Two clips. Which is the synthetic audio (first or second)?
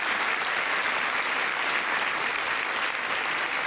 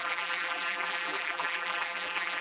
second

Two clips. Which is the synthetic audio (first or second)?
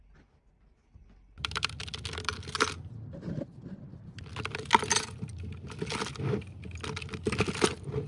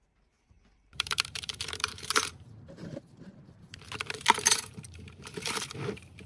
second